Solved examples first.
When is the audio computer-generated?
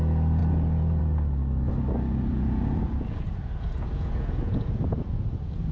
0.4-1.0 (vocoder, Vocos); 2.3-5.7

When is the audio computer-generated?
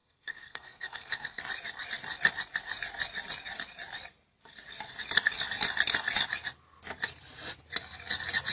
0.0-1.4 (codec, SNAC)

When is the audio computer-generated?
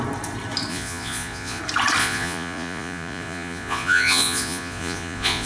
0.7-1.6 (vocoder, Vocos); 2.0-5.5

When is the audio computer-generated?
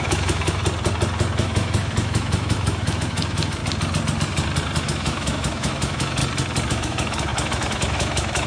0.0-0.6 (autoencoder, DAC-VAE); 1.4-3.6; 4.8-6.2; 6.7-8.5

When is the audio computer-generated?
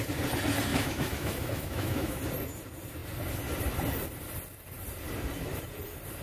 0.7-2.2 (autoencoder, DAC-VAE)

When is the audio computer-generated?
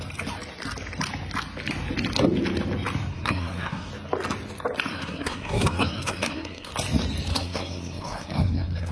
3.1-3.9 (codec, SNAC); 4.9-6.7; 7.3-8.9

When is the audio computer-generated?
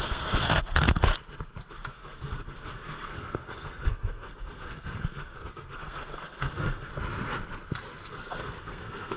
0.0-1.1 (codec, SNAC); 1.7-6.9; 8.1-9.2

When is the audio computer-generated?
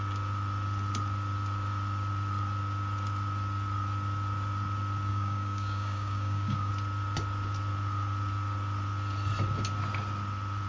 5.1-6.7 (codec, DAC)